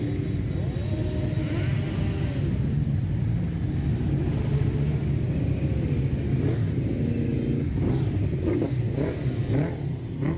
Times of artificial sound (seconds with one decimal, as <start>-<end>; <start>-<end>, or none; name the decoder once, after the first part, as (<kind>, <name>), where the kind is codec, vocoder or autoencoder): none